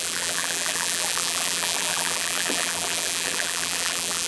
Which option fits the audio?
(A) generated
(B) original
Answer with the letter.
A